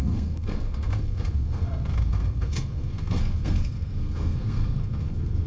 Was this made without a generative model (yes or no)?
no